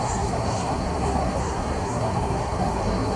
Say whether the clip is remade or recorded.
remade